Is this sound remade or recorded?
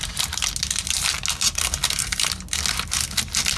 recorded